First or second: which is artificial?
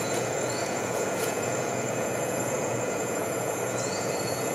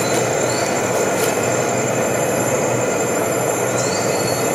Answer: first